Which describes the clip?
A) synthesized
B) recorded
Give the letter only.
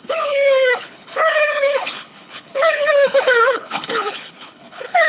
A